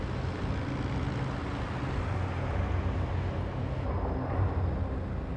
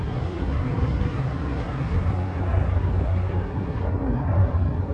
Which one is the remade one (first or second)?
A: second